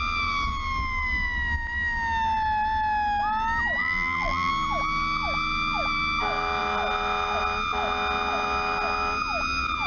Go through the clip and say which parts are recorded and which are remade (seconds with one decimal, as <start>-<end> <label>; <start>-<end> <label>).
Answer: 0.0-3.8 recorded; 3.8-4.5 remade; 4.5-9.9 recorded